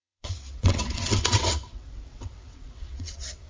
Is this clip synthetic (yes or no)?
yes